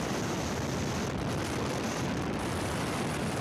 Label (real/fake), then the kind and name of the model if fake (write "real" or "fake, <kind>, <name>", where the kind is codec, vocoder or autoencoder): real